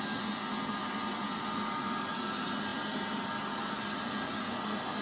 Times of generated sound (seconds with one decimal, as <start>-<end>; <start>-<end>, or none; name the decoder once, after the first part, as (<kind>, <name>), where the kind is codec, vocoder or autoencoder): none